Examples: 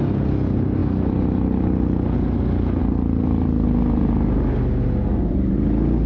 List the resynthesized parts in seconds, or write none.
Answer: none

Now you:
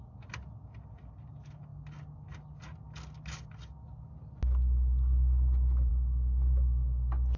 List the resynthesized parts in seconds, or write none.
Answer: none

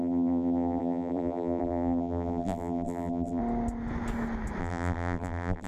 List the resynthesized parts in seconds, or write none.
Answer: 0.0-3.4 (vocoder, BigVGAN v2); 4.6-5.7

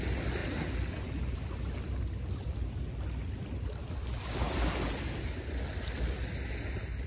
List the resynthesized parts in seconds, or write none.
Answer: none

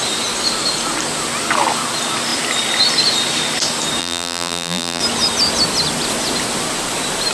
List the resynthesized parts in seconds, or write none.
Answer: 4.0-5.0 (vocoder, BigVGAN v2)

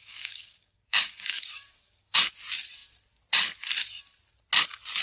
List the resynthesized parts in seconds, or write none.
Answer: 0.0-2.3 (codec, DAC)

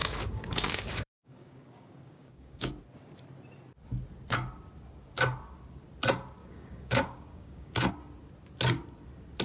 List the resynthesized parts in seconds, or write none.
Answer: 0.0-2.7 (codec, DAC); 6.4-7.9

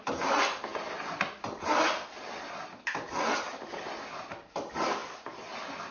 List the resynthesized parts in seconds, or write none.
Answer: none